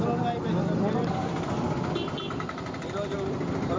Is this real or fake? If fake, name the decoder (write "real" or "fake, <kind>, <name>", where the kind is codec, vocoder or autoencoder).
real